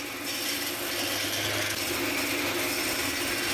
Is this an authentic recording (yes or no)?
yes